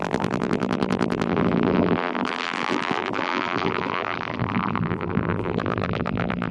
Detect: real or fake fake